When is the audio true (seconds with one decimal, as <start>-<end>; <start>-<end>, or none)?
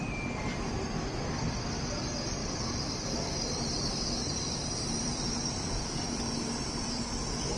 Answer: 0.0-2.4; 7.0-7.6